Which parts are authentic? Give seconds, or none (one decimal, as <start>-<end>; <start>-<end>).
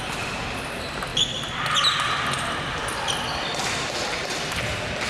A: 0.0-5.1